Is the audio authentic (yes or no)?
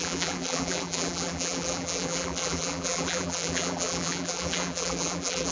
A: no